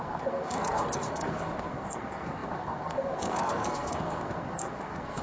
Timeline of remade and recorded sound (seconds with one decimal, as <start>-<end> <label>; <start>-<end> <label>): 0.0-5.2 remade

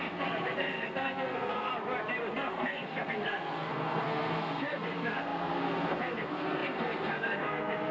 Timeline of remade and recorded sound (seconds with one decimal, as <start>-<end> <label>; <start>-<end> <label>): 0.0-1.7 remade; 1.7-2.3 recorded; 2.3-7.9 remade

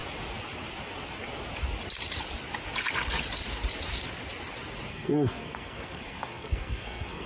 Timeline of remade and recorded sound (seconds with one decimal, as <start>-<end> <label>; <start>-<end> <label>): 0.0-4.9 recorded; 4.9-7.3 remade

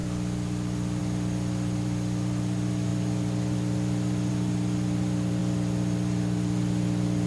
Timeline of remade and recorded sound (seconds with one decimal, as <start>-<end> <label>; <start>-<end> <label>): 0.0-7.3 recorded